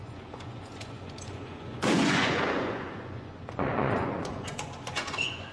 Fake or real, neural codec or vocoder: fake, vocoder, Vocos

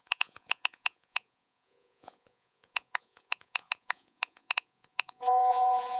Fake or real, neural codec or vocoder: fake, vocoder, Vocos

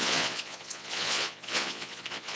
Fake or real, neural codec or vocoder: fake, vocoder, Vocos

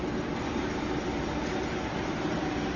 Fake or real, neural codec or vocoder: real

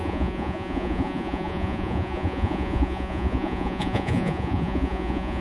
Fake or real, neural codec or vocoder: fake, vocoder, Vocos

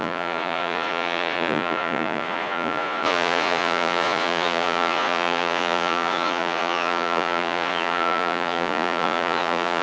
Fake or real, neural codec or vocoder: fake, vocoder, Vocos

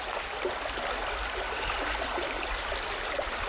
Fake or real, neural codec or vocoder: real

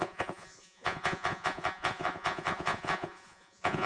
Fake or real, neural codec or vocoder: fake, vocoder, Vocos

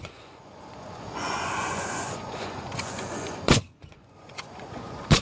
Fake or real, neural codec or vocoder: fake, vocoder, Vocos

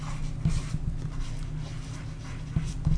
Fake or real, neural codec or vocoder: real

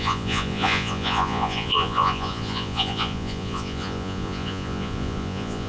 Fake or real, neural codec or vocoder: fake, vocoder, Vocos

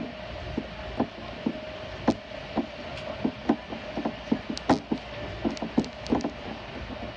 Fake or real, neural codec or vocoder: real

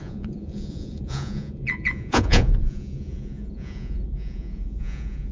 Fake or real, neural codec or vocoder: fake, vocoder, Vocos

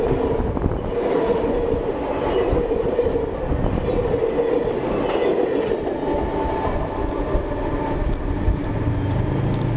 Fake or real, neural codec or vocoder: real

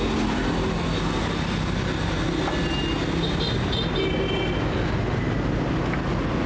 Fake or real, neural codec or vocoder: real